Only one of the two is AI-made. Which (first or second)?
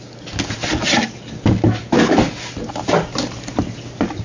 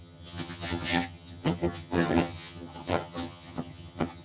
second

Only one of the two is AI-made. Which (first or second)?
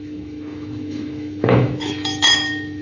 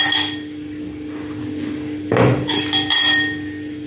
first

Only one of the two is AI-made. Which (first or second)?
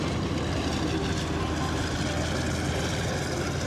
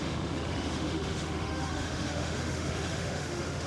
second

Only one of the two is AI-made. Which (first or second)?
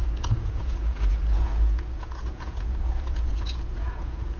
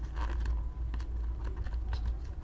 first